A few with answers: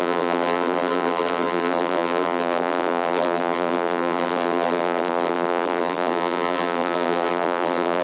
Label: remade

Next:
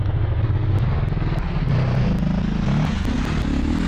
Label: recorded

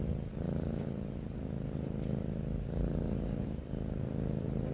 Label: recorded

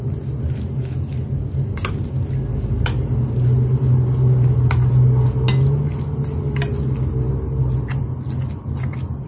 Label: recorded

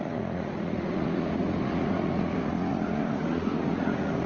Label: remade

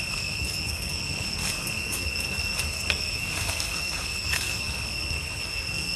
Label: remade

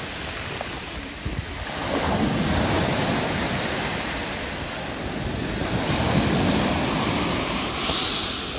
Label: recorded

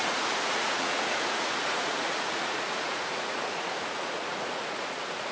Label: remade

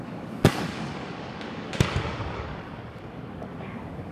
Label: remade